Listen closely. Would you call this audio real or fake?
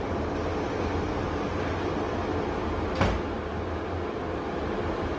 real